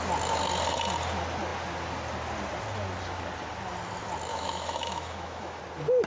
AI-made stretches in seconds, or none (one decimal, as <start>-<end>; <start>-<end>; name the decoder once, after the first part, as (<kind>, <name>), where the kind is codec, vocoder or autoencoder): 4.3-5.6 (autoencoder, DAC-VAE)